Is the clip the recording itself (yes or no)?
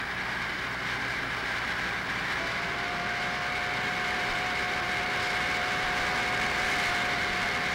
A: no